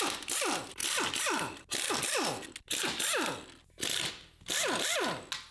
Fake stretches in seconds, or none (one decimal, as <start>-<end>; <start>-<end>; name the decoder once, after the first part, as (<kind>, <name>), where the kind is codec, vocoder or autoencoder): none